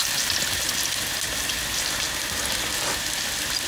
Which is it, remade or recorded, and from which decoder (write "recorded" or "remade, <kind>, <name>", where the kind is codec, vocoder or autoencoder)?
recorded